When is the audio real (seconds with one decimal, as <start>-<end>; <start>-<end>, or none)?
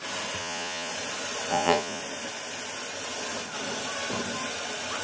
0.0-0.4; 0.9-1.5; 2.0-5.0